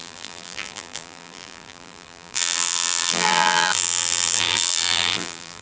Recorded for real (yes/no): no